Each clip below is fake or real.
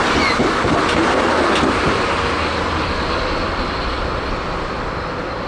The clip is real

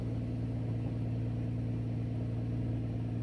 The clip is real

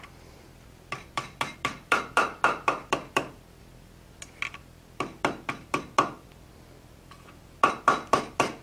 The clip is fake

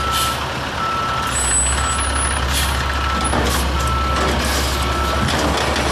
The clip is real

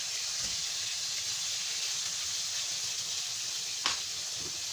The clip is real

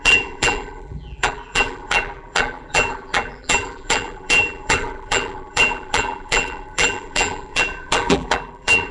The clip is fake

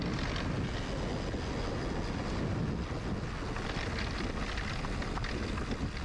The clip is real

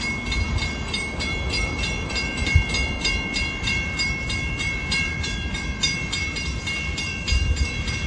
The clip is fake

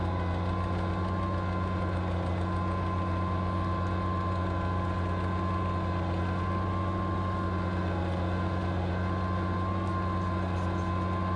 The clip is real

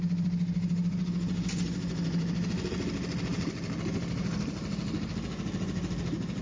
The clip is real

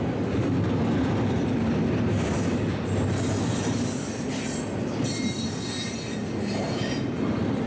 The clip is real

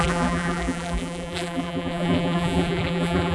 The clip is fake